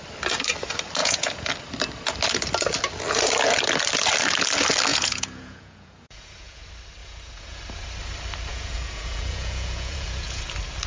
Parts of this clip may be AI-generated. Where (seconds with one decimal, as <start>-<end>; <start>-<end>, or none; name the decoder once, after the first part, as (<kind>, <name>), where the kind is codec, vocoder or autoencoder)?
1.0-1.5 (vocoder, Vocos); 4.9-6.6; 7.0-7.6; 8.5-10.4